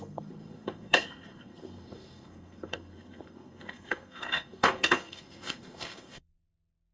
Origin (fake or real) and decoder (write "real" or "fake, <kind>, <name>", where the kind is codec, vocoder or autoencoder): fake, codec, SNAC